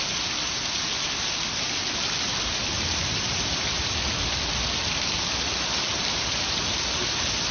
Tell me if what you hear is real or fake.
real